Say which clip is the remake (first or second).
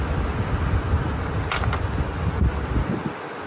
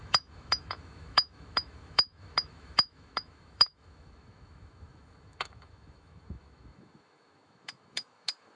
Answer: second